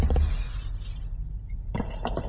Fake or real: real